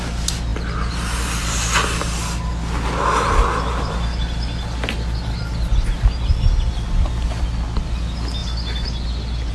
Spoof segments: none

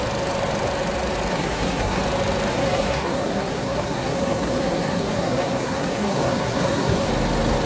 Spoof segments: 1.3-2.0 (codec, SNAC); 2.5-7.1

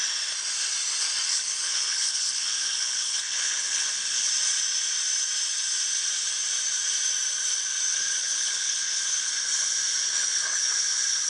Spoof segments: 1.3-4.3 (codec, HILCodec); 7.9-9.3